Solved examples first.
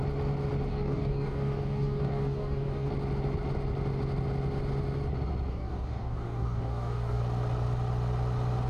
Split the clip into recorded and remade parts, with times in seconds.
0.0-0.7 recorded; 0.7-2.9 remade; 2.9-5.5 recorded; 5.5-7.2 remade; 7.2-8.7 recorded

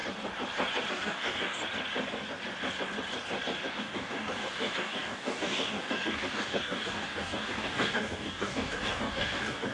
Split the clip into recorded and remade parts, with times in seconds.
0.0-0.9 recorded; 0.9-1.6 remade; 1.6-3.7 recorded; 3.7-9.7 remade

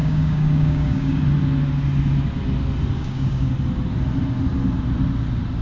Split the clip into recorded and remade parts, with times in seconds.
0.0-1.2 remade; 1.2-3.0 recorded; 3.0-3.5 remade; 3.5-5.6 recorded

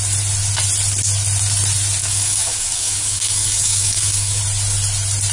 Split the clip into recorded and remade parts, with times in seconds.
0.0-2.0 recorded; 2.0-4.4 remade; 4.4-5.3 recorded

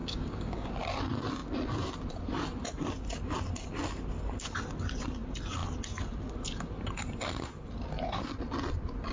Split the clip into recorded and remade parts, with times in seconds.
0.0-0.7 remade; 0.7-9.1 recorded

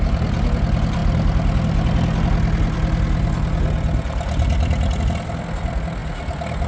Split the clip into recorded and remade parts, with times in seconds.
0.0-6.7 recorded

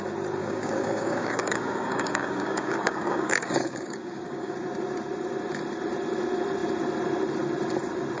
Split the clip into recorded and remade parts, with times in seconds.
0.0-0.4 recorded; 0.4-4.5 remade; 4.5-8.2 recorded